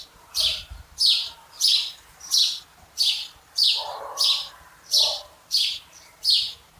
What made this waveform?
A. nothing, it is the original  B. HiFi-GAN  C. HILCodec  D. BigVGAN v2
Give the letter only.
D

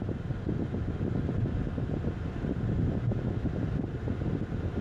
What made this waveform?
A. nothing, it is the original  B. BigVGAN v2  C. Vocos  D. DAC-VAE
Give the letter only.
A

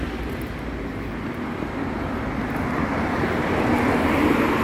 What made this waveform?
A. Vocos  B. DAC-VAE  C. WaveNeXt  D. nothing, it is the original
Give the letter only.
D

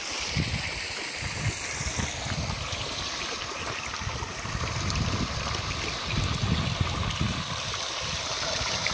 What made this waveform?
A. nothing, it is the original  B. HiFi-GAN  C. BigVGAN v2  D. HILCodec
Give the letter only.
A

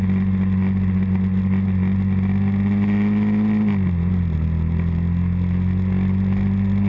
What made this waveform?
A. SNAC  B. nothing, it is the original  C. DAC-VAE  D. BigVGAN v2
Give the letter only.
B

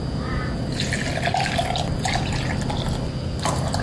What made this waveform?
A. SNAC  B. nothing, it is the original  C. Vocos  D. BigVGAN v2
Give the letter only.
B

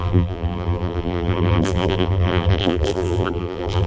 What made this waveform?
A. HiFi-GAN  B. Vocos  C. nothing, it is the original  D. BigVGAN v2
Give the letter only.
D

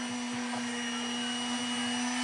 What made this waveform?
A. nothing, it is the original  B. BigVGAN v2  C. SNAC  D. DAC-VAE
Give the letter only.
A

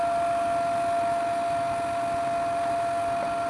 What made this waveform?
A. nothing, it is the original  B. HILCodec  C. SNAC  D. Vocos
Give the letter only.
A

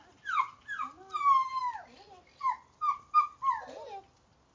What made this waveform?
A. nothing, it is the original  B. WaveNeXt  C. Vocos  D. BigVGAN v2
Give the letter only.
A